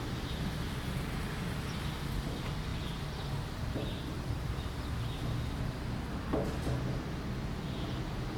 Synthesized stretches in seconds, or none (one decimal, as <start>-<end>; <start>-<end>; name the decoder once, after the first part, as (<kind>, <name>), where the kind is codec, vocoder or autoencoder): none